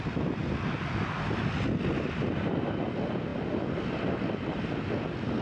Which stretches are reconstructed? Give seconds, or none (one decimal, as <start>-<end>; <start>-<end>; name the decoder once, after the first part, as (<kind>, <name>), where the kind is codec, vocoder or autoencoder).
none